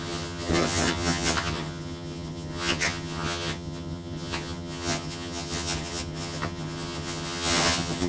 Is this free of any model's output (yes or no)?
no